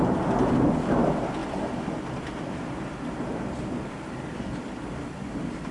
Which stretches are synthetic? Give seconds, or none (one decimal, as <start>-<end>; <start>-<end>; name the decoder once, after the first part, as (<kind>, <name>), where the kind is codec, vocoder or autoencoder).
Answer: none